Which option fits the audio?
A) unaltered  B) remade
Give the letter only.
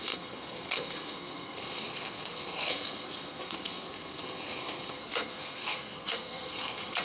B